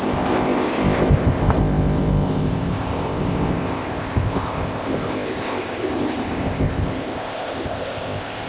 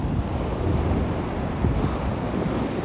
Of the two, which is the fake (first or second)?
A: first